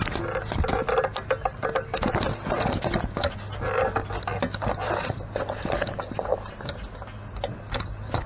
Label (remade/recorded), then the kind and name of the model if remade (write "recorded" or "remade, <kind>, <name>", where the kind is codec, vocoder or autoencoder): recorded